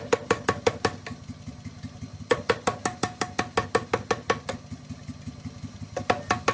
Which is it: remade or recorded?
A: recorded